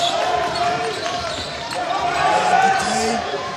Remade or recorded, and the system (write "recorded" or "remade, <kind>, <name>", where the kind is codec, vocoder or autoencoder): remade, vocoder, BigVGAN v2